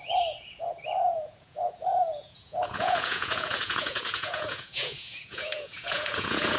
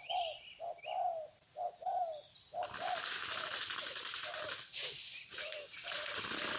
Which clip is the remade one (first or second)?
first